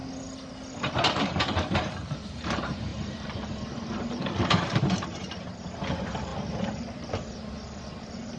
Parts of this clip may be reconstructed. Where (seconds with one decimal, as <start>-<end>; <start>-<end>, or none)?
0.9-8.4